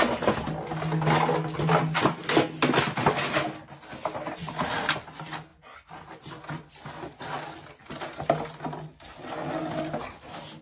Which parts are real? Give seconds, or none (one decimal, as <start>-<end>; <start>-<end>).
0.0-10.6